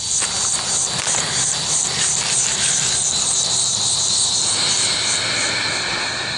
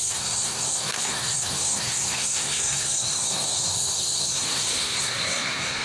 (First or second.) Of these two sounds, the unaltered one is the first